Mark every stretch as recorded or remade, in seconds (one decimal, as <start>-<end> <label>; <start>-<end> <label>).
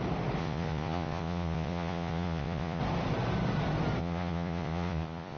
0.0-0.4 recorded; 0.4-2.8 remade; 2.8-4.0 recorded; 4.0-5.4 remade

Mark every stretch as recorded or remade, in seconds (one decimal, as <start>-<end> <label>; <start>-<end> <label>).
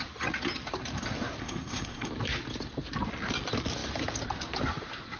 0.0-1.4 recorded; 1.4-2.1 remade; 2.1-5.2 recorded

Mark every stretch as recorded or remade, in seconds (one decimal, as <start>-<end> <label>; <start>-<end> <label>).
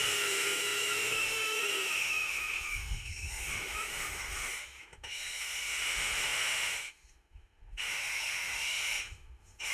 0.0-9.7 remade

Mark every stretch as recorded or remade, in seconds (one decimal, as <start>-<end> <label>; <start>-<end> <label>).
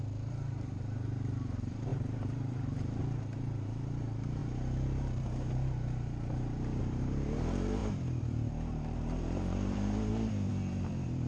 0.0-11.3 remade